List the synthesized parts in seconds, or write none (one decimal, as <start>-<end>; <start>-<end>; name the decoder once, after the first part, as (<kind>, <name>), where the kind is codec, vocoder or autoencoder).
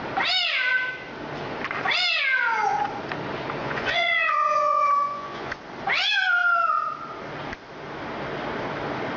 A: 3.6-5.6 (vocoder, Vocos)